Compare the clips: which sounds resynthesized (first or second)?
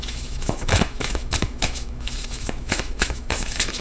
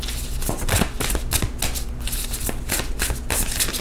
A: first